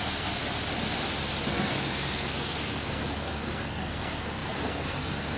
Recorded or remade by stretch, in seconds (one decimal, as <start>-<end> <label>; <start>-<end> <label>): 0.0-0.4 remade; 0.4-1.5 recorded; 1.5-5.4 remade